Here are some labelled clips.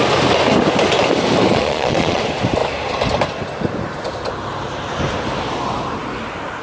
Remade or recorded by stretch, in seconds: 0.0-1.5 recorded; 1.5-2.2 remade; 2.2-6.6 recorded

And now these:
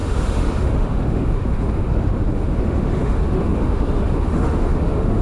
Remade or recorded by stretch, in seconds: 0.0-5.2 remade

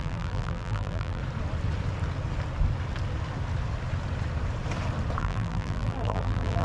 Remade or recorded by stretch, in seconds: 0.0-1.2 remade; 1.2-5.2 recorded; 5.2-6.6 remade

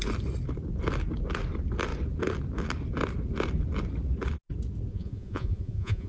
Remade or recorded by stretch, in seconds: 0.0-4.9 recorded; 4.9-6.1 remade